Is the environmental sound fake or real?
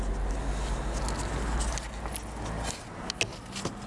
real